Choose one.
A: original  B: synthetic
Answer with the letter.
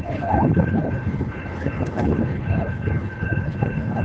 B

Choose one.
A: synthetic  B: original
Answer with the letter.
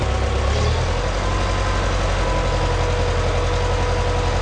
B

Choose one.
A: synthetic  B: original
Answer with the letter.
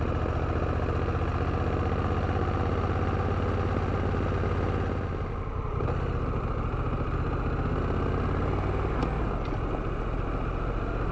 B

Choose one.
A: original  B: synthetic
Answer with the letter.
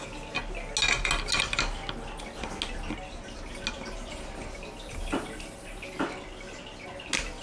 A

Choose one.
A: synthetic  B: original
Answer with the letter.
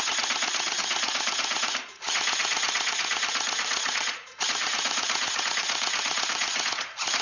A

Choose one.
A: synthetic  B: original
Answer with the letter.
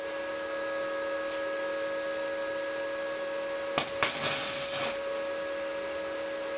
B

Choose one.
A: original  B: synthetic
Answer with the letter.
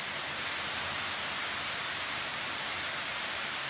B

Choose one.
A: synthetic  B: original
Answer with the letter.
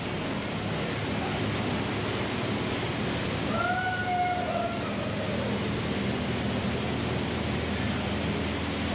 B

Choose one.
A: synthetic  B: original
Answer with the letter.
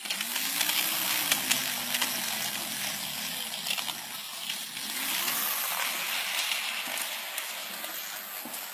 B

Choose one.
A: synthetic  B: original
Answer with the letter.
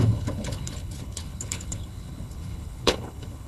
A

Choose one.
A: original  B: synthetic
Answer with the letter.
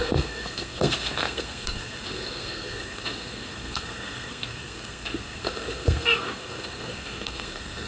B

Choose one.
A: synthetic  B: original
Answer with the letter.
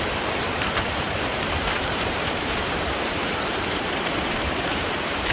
A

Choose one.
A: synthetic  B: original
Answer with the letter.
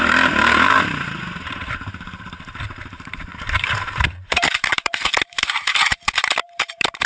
A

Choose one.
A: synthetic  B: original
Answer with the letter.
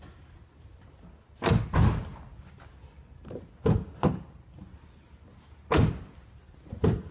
B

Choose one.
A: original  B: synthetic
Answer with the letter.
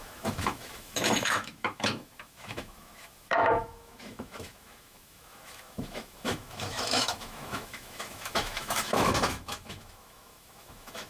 B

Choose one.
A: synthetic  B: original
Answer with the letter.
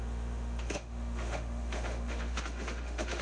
A